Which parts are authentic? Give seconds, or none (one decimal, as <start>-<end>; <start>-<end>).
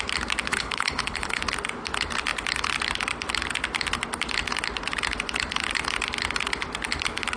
0.0-0.5; 1.4-7.4